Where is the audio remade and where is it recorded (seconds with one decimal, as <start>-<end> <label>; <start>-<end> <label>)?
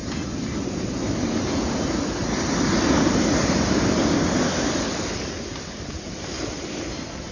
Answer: 0.0-7.3 recorded